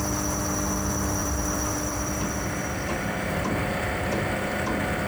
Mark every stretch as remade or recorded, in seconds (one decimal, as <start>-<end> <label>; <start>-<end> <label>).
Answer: 0.0-1.2 recorded; 1.2-4.3 remade; 4.3-5.1 recorded